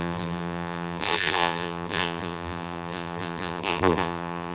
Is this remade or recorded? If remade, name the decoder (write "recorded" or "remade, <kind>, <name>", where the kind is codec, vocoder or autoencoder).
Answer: remade, vocoder, BigVGAN v2